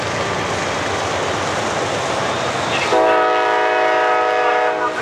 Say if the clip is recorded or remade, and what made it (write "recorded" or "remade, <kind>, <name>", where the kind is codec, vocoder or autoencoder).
recorded